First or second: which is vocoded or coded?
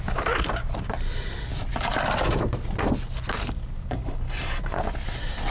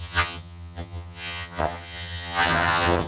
second